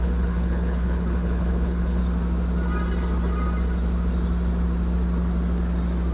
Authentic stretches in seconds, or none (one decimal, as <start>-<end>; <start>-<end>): 2.0-6.1